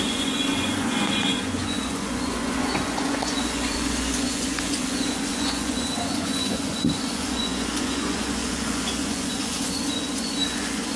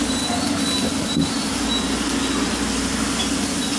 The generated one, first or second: first